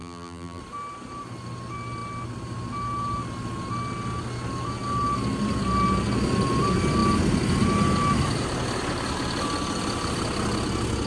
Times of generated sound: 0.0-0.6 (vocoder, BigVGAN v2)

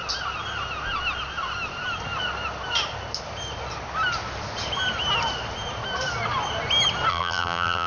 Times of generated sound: 7.1-7.9 (vocoder, BigVGAN v2)

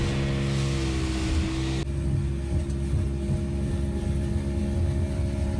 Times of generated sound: none

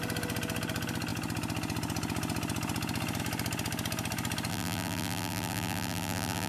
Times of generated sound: 4.5-6.5 (vocoder, BigVGAN v2)

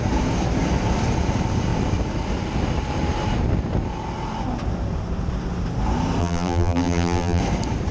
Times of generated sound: 6.2-7.4 (vocoder, BigVGAN v2)

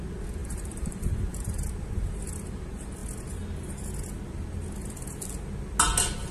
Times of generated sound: 0.4-2.3 (vocoder, BigVGAN v2)